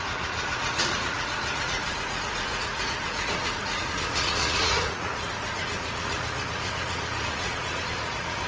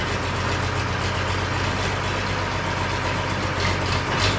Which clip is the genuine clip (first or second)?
second